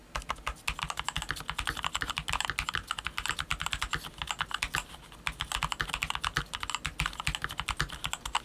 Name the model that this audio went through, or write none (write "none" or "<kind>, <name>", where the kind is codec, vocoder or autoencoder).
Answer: none